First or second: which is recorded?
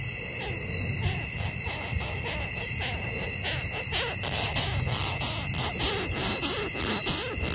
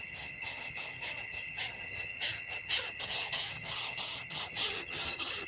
first